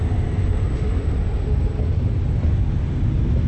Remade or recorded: recorded